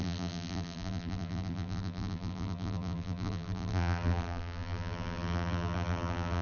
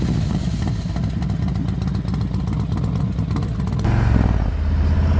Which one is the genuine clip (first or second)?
second